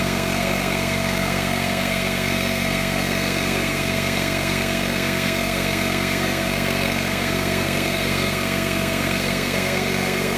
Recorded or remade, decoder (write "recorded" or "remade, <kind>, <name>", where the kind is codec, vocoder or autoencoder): remade, codec, SNAC